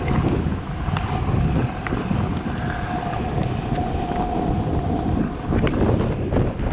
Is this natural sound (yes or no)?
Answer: yes